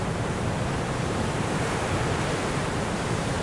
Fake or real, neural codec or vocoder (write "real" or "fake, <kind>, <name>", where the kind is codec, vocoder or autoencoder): fake, vocoder, BigVGAN v2